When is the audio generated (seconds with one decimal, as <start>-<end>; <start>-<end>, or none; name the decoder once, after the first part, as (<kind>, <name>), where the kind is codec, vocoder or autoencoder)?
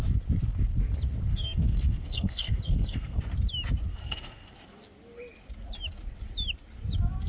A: 1.3-3.2 (codec, SNAC); 3.9-4.5